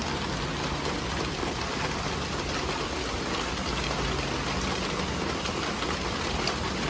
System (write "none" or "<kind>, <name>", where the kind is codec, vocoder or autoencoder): none